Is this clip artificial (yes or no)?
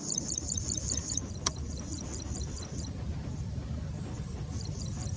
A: no